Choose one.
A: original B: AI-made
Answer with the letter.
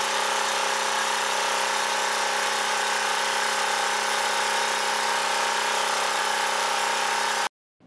A